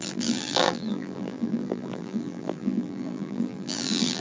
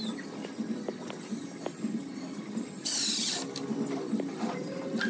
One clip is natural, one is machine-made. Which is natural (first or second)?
second